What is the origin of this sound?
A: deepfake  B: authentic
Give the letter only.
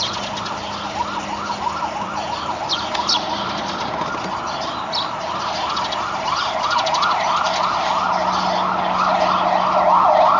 B